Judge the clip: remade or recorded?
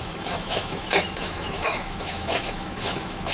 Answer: remade